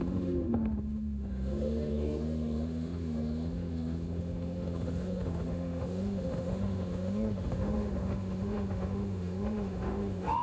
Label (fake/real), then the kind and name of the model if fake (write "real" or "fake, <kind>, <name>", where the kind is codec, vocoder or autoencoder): fake, autoencoder, DAC-VAE